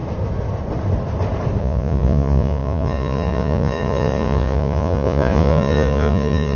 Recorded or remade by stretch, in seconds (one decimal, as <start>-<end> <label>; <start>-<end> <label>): 0.0-1.6 recorded; 1.6-6.6 remade